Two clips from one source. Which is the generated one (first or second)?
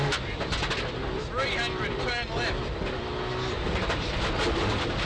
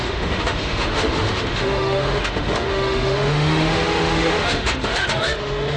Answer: second